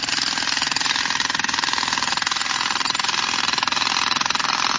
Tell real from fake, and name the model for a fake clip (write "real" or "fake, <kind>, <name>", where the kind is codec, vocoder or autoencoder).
real